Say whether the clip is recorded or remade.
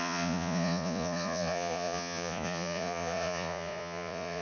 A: remade